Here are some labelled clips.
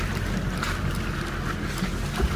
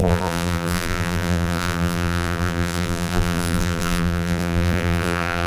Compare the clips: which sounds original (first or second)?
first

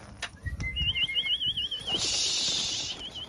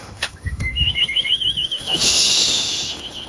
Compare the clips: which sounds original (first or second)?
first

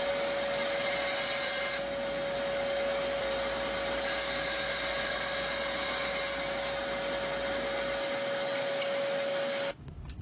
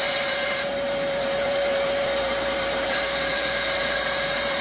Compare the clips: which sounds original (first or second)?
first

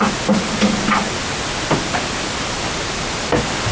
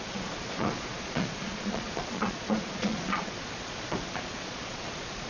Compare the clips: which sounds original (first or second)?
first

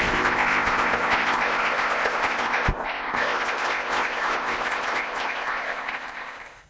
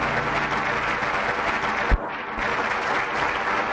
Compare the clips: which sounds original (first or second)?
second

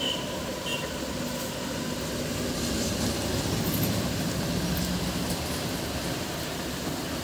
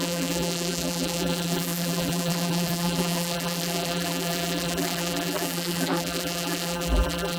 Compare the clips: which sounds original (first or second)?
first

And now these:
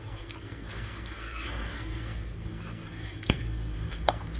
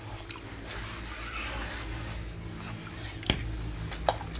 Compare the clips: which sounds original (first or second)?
second